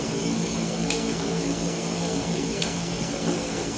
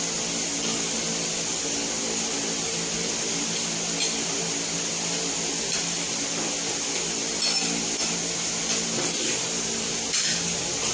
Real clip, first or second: second